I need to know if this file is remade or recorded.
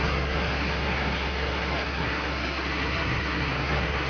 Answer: remade